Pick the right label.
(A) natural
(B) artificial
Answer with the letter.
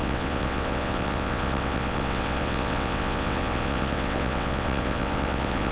B